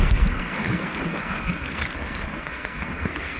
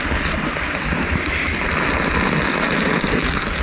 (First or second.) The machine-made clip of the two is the first